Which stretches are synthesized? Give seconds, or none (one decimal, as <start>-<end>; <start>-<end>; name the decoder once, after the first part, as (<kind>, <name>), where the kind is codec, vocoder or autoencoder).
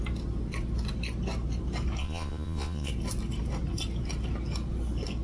2.0-2.9 (vocoder, Vocos)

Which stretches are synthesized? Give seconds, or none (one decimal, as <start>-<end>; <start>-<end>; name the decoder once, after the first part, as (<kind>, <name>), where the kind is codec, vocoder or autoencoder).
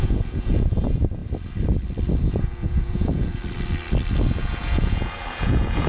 0.0-1.2 (vocoder, Vocos); 2.3-3.4; 4.3-5.9